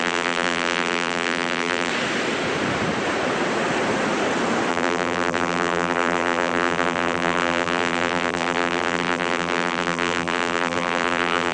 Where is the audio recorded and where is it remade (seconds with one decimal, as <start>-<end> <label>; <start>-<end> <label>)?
0.0-1.9 remade; 1.9-4.7 recorded; 4.7-11.5 remade